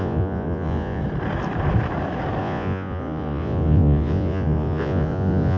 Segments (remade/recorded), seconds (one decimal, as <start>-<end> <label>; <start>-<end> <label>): 0.0-1.0 remade; 1.0-2.4 recorded; 2.4-5.6 remade